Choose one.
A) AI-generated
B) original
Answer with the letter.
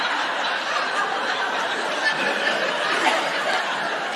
B